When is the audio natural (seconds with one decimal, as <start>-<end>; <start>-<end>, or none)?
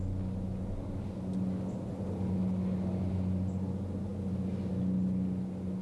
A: 0.0-5.8